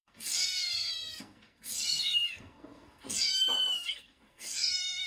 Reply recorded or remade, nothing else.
remade